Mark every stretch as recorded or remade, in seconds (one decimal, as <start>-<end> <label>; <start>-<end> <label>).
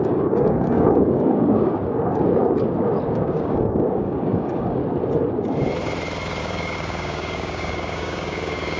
0.0-1.7 remade; 1.7-3.1 recorded; 3.1-4.8 remade; 4.8-6.4 recorded; 6.4-8.8 remade